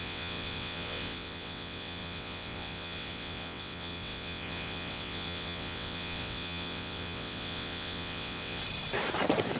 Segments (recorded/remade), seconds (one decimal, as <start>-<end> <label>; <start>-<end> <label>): 0.0-8.6 remade; 8.6-9.6 recorded